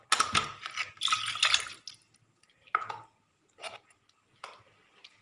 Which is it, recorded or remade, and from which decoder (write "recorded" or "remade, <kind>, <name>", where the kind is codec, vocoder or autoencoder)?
recorded